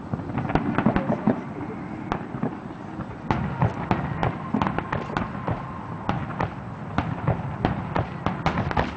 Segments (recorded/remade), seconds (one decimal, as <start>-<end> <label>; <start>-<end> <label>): 0.0-9.0 recorded